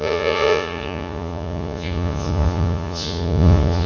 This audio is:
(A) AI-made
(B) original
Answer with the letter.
A